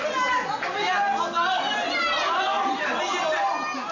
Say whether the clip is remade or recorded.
recorded